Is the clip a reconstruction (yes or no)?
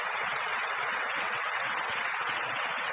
yes